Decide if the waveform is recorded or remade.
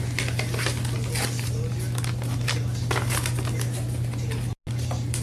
recorded